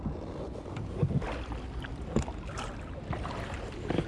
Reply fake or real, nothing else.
real